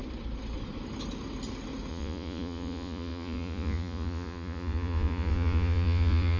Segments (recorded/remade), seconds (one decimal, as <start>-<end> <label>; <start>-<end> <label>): 0.0-1.9 recorded; 1.9-6.4 remade